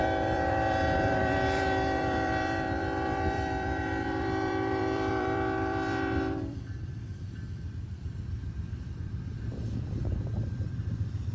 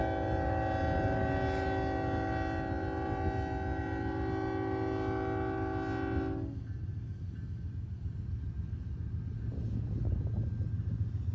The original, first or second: second